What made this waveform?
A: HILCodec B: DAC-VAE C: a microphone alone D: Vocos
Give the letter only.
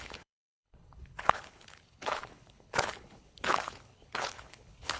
A